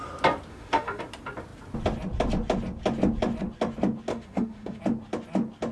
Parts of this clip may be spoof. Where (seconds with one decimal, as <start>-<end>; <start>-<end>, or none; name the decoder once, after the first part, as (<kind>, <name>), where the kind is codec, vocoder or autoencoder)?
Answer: 0.5-1.0 (autoencoder, DAC-VAE); 4.1-4.8